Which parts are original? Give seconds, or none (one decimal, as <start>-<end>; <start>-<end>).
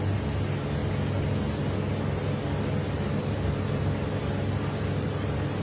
0.0-5.6